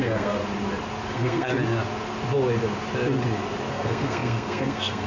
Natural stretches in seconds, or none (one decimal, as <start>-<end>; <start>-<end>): 0.4-1.1; 1.5-3.7